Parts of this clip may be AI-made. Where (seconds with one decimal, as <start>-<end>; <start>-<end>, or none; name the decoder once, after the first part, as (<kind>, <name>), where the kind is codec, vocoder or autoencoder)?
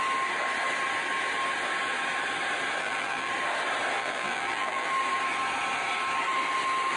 2.8-3.3 (vocoder, BigVGAN v2); 4.0-4.9